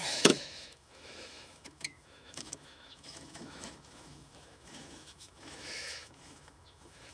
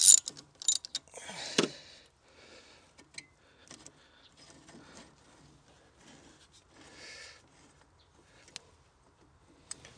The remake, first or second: first